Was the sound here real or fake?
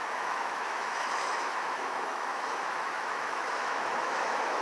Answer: fake